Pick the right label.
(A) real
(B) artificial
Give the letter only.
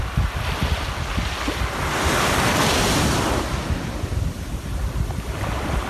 A